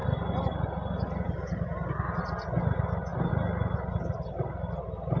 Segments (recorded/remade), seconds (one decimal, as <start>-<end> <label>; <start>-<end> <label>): 0.0-5.2 recorded